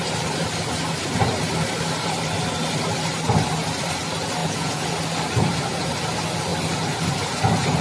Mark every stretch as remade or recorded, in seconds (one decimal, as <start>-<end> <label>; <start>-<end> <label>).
0.0-4.4 recorded; 4.4-4.9 remade; 4.9-7.8 recorded